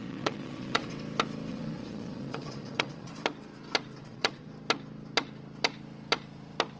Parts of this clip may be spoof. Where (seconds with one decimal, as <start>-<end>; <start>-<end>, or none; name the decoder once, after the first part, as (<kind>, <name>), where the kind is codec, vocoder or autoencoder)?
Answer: 0.0-0.9 (vocoder, Vocos); 1.5-3.1; 4.0-4.5